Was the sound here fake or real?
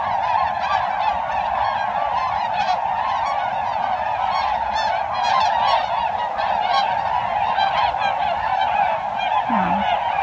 real